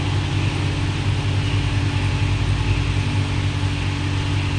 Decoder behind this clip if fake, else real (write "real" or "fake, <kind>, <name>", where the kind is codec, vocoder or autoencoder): real